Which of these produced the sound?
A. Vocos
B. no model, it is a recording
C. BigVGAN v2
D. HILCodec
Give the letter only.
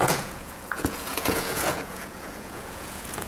A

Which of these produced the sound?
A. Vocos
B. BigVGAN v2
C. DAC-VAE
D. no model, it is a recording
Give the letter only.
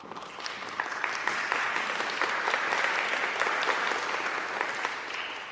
D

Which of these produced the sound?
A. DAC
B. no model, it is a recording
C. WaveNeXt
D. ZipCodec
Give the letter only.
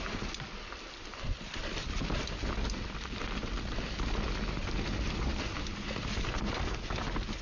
B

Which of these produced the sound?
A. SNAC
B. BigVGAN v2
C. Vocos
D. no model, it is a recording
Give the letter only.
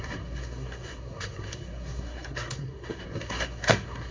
A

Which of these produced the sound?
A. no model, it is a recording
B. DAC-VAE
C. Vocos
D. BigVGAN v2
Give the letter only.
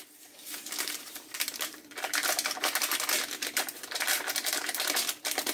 D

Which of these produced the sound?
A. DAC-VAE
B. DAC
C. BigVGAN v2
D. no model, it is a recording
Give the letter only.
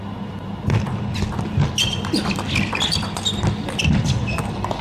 D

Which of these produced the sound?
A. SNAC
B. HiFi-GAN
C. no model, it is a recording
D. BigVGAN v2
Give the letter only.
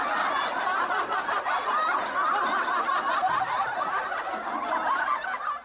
C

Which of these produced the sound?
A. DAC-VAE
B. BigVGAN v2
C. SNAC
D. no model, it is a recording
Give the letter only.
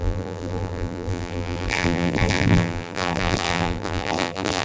B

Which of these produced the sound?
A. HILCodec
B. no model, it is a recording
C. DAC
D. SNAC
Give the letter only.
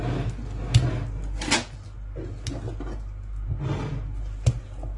B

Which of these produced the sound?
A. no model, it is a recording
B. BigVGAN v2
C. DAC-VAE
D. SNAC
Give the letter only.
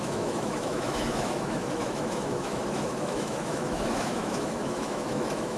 C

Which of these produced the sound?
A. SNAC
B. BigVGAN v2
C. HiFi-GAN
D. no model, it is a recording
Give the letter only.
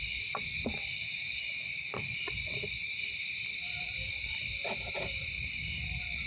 B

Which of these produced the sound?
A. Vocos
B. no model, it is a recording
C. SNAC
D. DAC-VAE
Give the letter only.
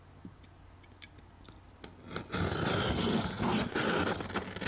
B